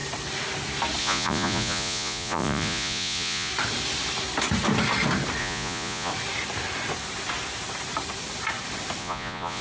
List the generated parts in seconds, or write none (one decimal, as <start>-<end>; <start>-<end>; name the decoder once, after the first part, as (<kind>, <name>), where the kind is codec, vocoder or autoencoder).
1.0-3.5 (vocoder, Vocos); 5.4-6.1; 9.0-9.6